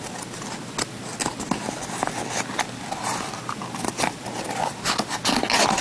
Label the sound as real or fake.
real